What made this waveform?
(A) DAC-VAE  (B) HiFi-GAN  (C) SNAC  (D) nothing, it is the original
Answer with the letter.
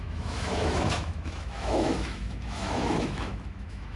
A